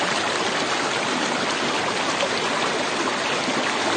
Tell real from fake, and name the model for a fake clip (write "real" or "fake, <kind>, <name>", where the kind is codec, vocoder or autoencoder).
real